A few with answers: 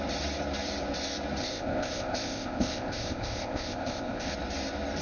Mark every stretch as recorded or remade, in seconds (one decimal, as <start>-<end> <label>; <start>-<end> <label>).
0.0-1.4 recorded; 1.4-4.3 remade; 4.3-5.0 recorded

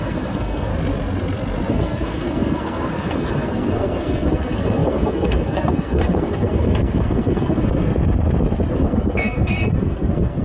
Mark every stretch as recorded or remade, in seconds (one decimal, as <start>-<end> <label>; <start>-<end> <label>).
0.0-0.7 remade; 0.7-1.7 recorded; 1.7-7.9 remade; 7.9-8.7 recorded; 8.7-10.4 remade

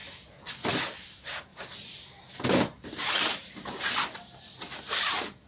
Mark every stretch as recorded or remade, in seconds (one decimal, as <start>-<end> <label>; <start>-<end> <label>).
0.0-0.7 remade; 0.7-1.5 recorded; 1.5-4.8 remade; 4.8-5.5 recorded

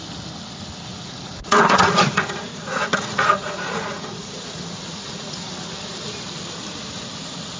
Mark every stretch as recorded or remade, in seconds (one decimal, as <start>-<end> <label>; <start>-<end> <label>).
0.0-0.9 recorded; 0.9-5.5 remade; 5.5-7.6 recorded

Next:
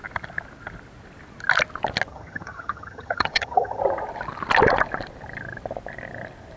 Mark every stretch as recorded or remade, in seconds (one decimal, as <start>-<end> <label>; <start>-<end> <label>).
0.0-2.1 recorded; 2.1-3.8 remade; 3.8-6.6 recorded

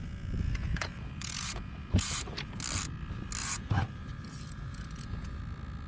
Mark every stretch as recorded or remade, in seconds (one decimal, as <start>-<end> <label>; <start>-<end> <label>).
0.0-2.6 remade; 2.6-3.4 recorded; 3.4-5.4 remade; 5.4-5.9 recorded

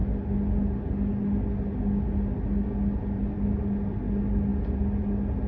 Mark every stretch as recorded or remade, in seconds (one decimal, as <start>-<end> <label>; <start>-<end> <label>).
0.0-5.5 recorded